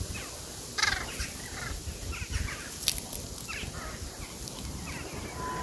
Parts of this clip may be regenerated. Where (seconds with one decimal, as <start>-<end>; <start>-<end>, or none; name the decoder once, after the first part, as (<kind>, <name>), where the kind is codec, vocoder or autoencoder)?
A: none